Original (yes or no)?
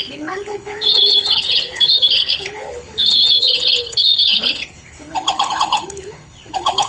no